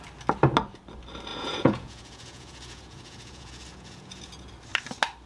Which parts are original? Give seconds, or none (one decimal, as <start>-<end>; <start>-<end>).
0.0-1.3; 4.5-5.3